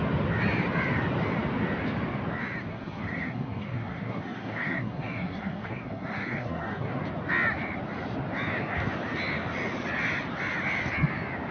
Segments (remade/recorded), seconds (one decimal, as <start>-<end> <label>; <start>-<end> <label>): 0.0-2.7 recorded; 2.7-7.0 remade; 7.0-11.5 recorded